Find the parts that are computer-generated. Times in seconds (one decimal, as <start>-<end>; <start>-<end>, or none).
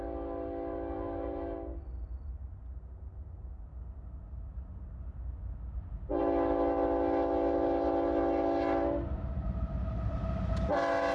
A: none